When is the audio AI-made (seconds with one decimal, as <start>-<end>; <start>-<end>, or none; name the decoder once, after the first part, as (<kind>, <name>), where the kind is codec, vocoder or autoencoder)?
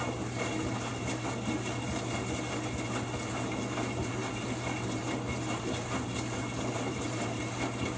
4.2-7.4 (vocoder, BigVGAN v2)